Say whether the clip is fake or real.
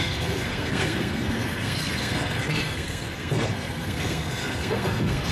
fake